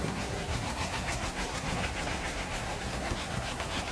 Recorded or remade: remade